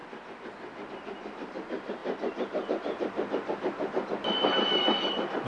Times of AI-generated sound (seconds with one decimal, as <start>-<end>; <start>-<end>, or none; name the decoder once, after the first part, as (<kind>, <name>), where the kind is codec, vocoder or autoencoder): 0.0-0.9 (vocoder, BigVGAN v2)